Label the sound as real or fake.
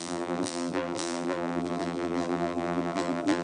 fake